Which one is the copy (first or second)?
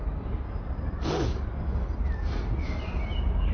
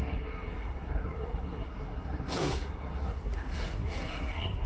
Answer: second